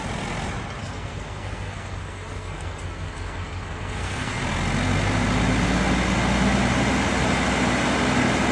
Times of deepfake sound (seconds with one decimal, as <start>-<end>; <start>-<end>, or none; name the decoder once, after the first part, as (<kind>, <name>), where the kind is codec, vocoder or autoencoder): 0.8-4.4 (codec, SNAC)